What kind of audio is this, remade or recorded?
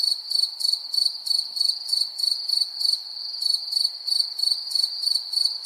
recorded